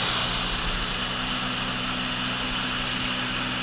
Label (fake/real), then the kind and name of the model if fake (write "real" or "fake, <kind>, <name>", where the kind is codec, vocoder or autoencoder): real